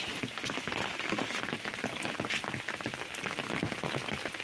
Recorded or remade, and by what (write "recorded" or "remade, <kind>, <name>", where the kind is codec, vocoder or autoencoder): recorded